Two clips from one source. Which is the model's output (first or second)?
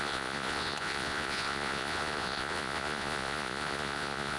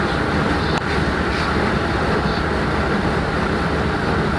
first